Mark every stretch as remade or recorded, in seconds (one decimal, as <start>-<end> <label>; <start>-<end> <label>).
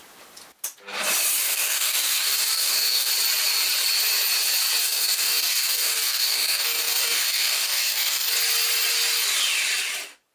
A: 0.0-1.4 recorded; 1.4-3.1 remade; 3.1-4.8 recorded; 4.8-8.3 remade; 8.3-10.3 recorded